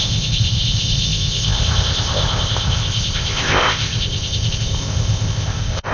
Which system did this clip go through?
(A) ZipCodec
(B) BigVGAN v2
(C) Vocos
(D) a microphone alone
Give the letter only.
A